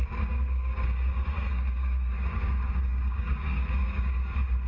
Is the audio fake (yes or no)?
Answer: yes